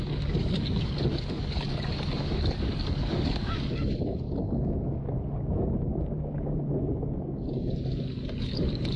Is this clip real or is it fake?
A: fake